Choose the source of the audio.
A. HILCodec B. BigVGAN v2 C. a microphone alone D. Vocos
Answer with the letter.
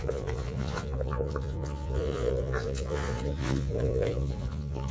D